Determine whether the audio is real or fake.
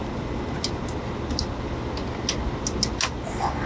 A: real